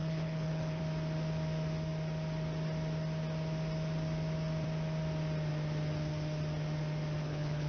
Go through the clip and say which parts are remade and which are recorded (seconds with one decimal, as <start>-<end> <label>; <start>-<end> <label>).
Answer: 0.0-0.8 remade; 0.8-7.2 recorded; 7.2-7.7 remade

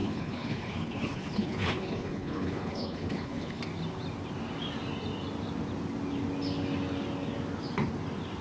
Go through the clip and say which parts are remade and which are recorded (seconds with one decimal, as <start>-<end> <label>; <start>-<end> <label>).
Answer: 0.0-3.6 remade; 3.6-8.4 recorded